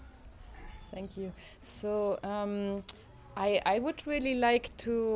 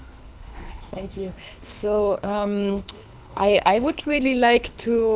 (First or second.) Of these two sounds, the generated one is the second